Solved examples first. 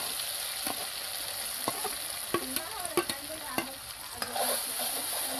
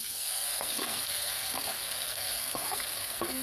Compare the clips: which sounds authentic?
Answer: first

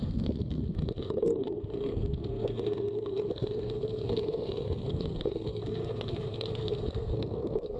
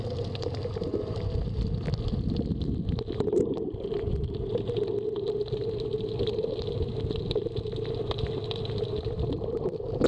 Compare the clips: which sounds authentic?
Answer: second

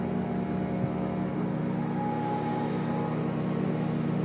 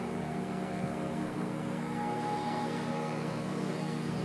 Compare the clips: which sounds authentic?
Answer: first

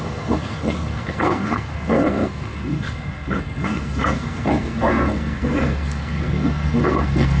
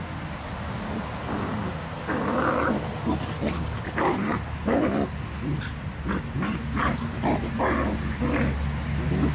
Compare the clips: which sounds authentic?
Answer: second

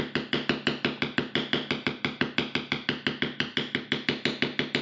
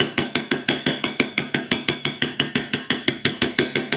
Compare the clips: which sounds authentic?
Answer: first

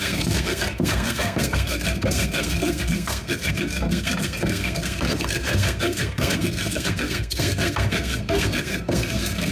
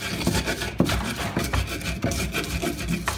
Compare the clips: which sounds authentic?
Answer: second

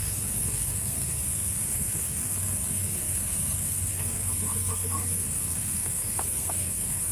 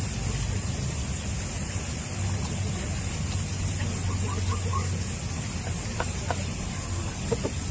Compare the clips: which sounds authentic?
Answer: second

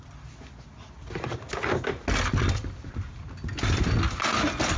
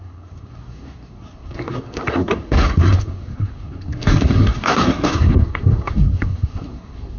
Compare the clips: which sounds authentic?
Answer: first